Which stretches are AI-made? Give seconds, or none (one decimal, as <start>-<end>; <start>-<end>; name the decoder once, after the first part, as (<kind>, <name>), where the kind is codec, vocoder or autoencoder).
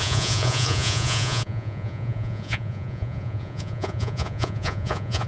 0.0-5.3 (vocoder, Vocos)